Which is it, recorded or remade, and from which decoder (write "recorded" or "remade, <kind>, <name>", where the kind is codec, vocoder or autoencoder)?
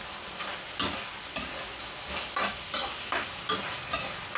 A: recorded